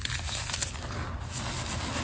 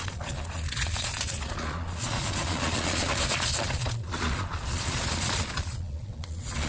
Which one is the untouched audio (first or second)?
first